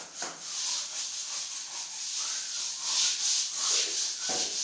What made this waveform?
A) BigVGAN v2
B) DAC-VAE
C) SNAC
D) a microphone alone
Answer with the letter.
D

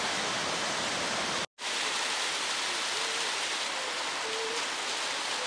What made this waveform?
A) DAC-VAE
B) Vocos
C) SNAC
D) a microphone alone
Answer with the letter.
D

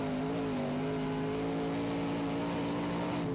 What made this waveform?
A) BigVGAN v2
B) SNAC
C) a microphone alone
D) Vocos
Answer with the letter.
C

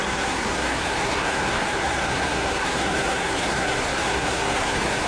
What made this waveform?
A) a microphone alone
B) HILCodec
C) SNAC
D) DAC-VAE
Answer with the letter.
C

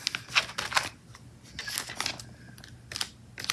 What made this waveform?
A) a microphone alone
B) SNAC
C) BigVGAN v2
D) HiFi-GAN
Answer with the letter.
A